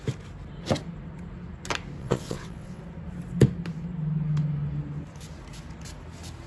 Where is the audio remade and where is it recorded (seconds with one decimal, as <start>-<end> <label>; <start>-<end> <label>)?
0.0-2.0 recorded; 2.0-2.8 remade; 2.8-6.5 recorded